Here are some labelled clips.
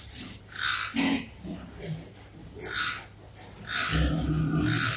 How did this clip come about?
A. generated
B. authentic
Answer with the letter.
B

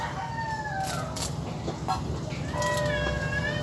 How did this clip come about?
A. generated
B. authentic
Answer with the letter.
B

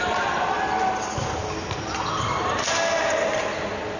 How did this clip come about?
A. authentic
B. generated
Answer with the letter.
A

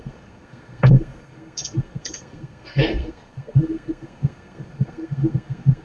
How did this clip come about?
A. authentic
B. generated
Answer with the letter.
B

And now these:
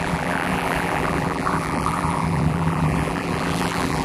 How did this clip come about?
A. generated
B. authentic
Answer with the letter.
A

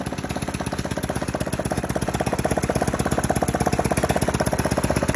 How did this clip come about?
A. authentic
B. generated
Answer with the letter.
A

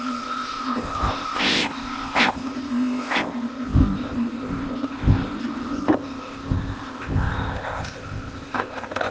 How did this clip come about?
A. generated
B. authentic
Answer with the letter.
A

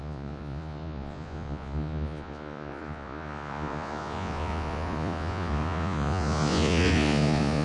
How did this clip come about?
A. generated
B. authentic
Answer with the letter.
A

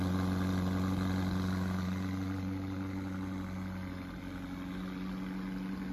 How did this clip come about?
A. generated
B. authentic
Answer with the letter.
B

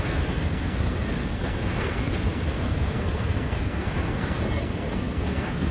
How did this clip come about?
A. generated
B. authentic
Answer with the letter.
A